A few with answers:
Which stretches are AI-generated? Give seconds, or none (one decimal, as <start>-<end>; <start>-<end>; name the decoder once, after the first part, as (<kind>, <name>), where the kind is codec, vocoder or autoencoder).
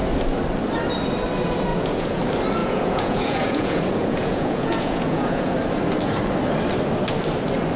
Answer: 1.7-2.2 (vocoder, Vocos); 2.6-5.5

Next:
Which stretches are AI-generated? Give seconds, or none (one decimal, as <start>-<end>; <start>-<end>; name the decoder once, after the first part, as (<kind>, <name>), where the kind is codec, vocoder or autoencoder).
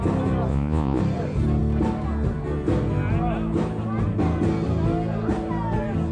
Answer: 0.5-1.0 (vocoder, Vocos)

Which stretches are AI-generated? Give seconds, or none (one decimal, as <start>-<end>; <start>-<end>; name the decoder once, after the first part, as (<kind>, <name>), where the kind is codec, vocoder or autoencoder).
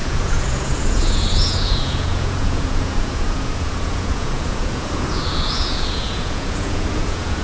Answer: 0.0-7.4 (vocoder, Vocos)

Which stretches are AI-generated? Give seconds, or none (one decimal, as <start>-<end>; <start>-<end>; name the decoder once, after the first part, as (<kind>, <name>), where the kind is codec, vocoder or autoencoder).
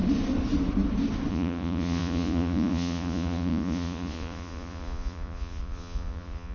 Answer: 1.3-6.5 (vocoder, Vocos)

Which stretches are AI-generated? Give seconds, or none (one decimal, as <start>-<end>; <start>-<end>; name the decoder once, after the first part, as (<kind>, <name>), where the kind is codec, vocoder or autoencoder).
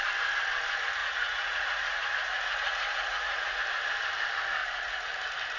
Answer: 1.0-3.6 (vocoder, Vocos); 4.6-5.1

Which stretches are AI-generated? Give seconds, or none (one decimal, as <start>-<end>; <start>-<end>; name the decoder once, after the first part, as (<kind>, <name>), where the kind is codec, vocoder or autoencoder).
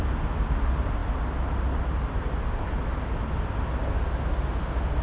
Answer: none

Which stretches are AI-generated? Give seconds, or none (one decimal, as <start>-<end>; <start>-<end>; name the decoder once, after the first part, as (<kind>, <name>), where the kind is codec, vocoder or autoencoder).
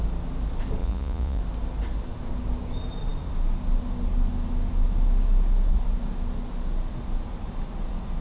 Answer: 0.8-1.4 (vocoder, Vocos)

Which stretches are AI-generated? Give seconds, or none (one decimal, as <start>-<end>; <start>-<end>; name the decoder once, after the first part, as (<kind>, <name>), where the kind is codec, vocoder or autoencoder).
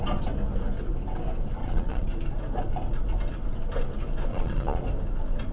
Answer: 1.6-2.1 (vocoder, Vocos); 4.3-4.8